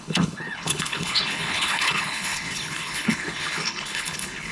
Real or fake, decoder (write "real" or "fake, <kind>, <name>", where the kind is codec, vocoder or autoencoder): fake, codec, HILCodec